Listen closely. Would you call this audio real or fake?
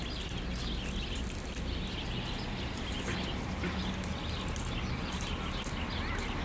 real